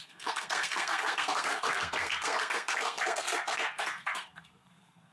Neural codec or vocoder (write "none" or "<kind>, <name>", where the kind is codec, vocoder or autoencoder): codec, SNAC